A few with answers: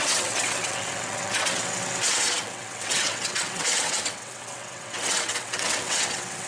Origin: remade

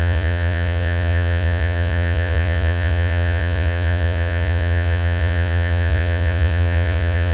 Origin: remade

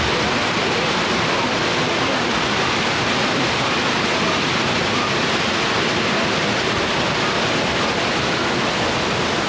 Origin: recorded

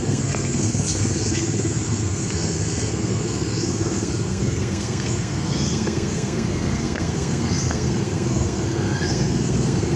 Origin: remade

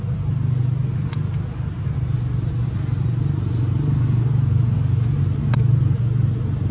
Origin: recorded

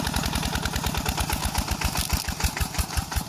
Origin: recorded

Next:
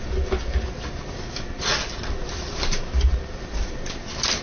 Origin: recorded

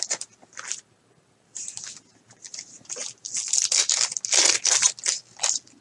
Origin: recorded